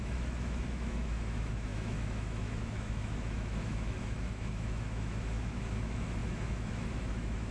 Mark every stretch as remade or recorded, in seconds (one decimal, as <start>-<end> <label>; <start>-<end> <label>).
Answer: 0.0-7.5 remade